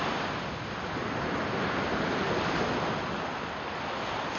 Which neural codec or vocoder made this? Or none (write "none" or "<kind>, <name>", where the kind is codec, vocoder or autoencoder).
none